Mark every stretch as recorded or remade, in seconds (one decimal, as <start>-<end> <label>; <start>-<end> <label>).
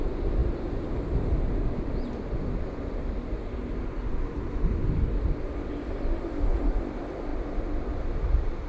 0.0-8.7 recorded